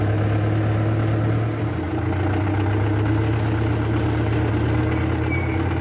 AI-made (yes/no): no